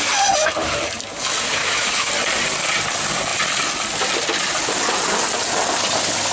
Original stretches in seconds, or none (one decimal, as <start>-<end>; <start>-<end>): 0.0-1.6; 2.1-6.3